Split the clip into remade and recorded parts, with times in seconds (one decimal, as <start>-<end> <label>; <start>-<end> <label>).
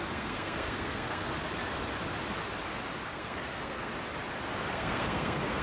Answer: 0.0-1.3 remade; 1.3-3.0 recorded; 3.0-3.9 remade; 3.9-4.7 recorded; 4.7-5.6 remade